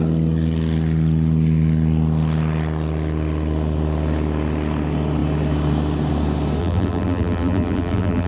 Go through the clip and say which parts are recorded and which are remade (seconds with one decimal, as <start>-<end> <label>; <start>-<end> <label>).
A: 0.0-6.6 recorded; 6.6-8.3 remade